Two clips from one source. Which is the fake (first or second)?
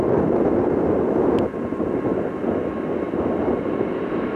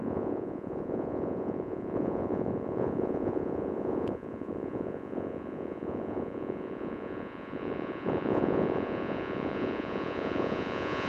second